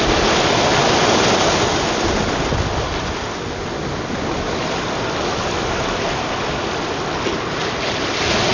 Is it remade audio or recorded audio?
recorded